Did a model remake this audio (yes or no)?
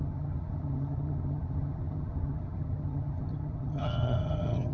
yes